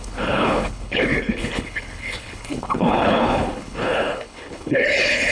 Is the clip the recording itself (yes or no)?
no